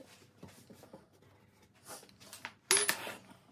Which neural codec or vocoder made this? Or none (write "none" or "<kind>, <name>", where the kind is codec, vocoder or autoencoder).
none